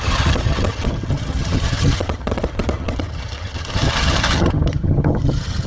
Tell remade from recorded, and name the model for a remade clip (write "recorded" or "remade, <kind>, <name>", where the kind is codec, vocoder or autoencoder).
remade, vocoder, HiFi-GAN